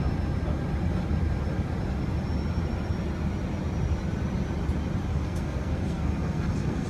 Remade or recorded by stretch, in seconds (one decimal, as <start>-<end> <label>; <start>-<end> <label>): 0.0-5.1 recorded; 5.1-6.9 remade

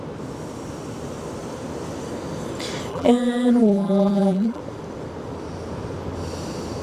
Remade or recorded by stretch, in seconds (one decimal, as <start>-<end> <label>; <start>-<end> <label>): 0.0-2.9 recorded; 2.9-4.6 remade; 4.6-6.8 recorded

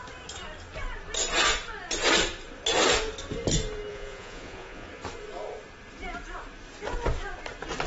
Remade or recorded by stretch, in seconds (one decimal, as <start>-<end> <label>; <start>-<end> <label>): 0.0-3.9 recorded; 3.9-4.9 remade; 4.9-7.9 recorded

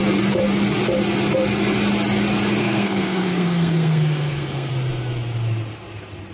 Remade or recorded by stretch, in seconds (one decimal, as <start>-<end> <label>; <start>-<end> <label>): 0.0-2.6 recorded; 2.6-4.7 remade; 4.7-6.3 recorded

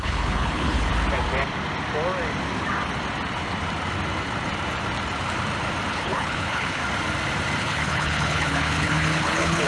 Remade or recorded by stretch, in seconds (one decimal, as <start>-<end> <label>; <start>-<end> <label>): 0.0-0.9 remade; 0.9-5.9 recorded; 5.9-6.8 remade; 6.8-7.6 recorded; 7.6-9.7 remade